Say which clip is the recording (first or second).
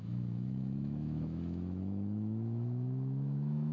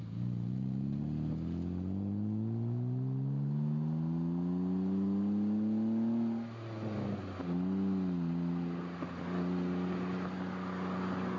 second